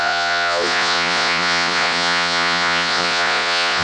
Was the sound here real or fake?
fake